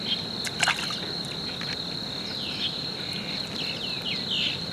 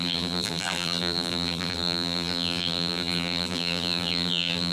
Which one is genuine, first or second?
first